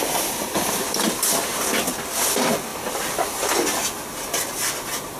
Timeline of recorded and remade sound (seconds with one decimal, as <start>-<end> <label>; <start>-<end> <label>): 0.0-5.2 recorded